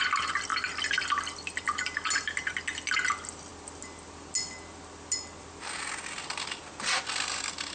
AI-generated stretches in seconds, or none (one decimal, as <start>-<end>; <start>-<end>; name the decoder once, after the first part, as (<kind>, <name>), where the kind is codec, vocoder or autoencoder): none